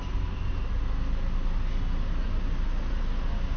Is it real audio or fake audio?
real